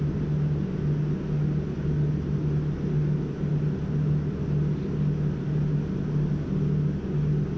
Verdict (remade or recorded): recorded